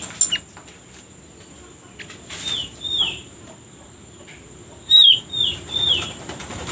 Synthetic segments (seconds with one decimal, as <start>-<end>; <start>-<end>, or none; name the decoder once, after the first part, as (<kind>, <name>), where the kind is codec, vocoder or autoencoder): 2.6-6.7 (vocoder, BigVGAN v2)